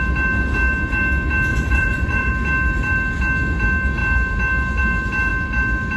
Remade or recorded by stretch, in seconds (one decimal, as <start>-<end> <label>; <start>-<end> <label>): 0.0-1.5 recorded; 1.5-2.3 remade; 2.3-6.0 recorded